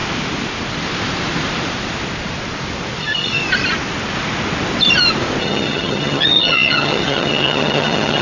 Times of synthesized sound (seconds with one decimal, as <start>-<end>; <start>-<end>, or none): 3.0-3.4; 5.4-8.2